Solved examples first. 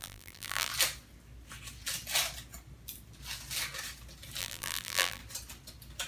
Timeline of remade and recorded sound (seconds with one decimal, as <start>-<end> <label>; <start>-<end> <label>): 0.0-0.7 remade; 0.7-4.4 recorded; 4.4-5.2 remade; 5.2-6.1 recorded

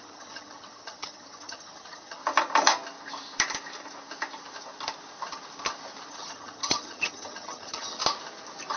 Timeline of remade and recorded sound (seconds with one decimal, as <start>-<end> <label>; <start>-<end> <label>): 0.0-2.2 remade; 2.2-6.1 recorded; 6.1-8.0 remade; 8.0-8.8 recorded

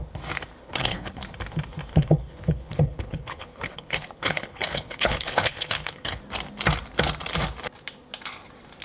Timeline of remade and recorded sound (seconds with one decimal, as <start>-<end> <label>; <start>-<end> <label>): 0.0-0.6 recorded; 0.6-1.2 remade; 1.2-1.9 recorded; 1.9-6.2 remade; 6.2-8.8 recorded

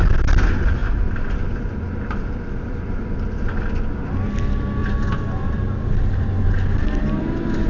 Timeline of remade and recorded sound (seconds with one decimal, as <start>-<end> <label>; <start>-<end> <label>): 0.0-0.8 recorded; 0.8-3.7 remade; 3.7-4.8 recorded; 4.8-7.7 remade